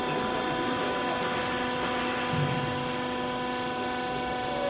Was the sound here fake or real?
real